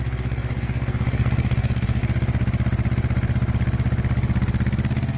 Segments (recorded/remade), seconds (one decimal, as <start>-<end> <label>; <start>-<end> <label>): 0.0-2.0 remade; 2.0-5.2 recorded